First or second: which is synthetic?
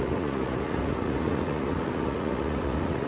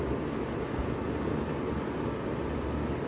first